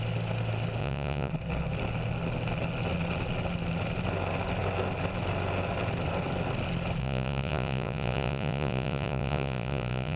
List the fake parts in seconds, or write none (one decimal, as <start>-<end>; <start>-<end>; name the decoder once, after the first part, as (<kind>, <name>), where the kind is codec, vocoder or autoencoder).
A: 0.8-1.3 (vocoder, Vocos); 7.0-10.2